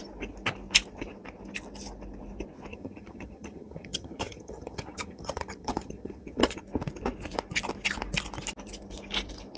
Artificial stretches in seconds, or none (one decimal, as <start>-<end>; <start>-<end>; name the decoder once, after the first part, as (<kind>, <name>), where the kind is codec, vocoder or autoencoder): 2.7-6.6 (vocoder, HiFi-GAN)